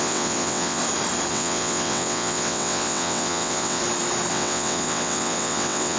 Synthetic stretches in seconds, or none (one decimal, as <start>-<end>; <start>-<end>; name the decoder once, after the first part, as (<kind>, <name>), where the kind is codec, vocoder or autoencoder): 0.0-0.8 (vocoder, WaveNeXt); 1.3-3.8; 4.3-6.0